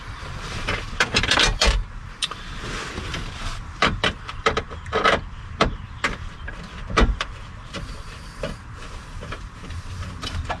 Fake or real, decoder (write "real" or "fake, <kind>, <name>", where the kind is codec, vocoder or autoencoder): fake, vocoder, BigVGAN v2